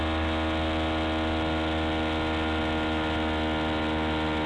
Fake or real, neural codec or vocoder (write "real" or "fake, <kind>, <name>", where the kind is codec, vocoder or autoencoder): real